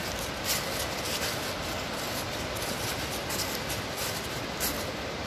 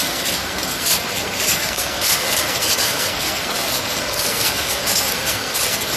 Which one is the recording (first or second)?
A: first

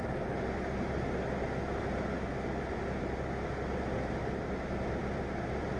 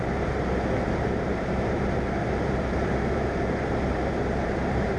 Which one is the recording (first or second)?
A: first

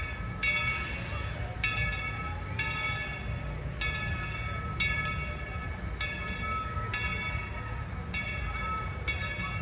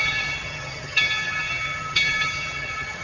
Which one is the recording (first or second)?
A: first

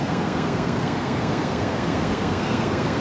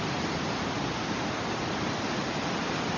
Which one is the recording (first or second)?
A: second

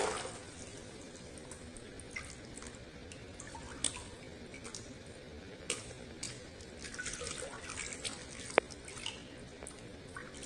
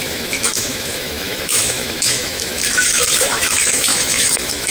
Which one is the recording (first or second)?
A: first